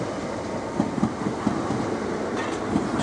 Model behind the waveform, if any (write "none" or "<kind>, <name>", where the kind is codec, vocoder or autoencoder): none